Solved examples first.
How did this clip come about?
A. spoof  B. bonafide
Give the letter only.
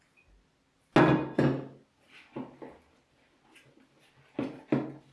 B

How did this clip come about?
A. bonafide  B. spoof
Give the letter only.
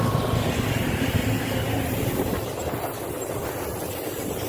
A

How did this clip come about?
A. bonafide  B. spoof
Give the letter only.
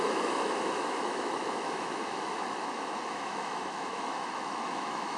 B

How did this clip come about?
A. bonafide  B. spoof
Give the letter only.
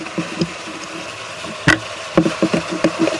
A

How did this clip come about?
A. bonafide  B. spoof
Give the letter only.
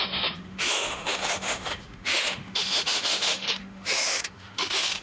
B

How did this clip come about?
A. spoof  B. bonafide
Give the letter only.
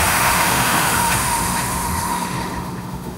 A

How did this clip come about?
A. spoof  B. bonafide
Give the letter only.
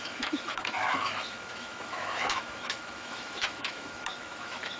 A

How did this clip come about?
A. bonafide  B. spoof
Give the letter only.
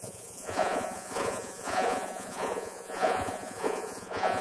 B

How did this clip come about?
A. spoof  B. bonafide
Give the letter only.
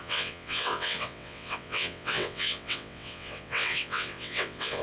A